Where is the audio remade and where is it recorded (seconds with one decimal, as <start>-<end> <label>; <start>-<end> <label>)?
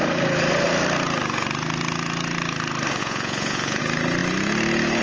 0.0-3.0 recorded; 3.0-3.8 remade; 3.8-5.0 recorded